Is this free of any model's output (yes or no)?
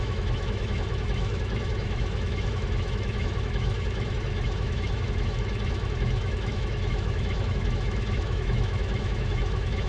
no